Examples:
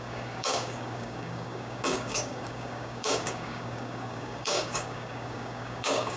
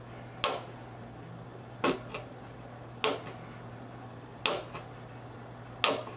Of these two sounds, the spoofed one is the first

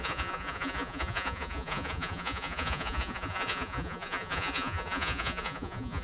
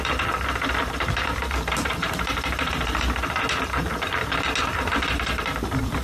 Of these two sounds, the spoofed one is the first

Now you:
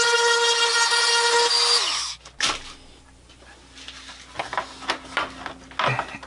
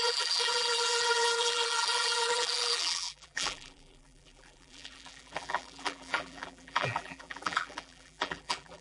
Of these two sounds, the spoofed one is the second